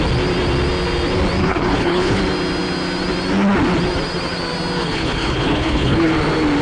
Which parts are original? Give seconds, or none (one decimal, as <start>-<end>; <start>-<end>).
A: 0.0-1.4; 2.2-4.8; 6.1-6.6